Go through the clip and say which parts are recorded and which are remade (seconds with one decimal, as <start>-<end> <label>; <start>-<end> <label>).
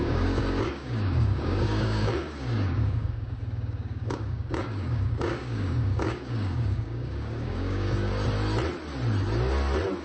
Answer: 0.0-8.1 remade; 8.1-10.0 recorded